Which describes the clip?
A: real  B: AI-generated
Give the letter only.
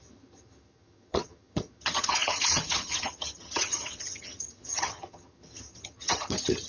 B